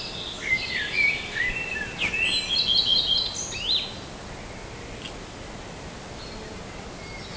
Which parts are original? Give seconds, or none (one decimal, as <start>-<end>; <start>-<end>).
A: 0.0-7.4